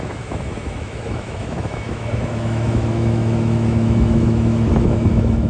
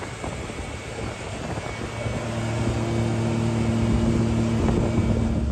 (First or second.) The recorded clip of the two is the second